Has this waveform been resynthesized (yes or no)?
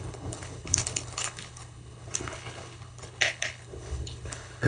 yes